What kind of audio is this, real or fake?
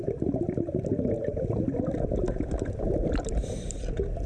real